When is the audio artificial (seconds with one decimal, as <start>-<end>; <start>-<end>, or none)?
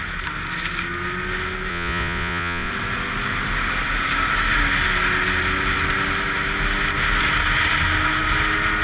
1.7-2.7